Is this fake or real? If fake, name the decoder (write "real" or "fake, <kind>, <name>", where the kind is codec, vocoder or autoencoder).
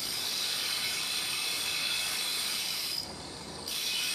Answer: fake, codec, DAC